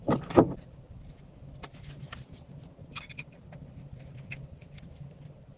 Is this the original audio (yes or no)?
yes